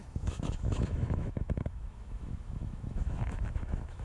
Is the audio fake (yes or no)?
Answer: yes